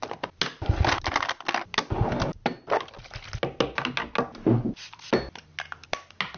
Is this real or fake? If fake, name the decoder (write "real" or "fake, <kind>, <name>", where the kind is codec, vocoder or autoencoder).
real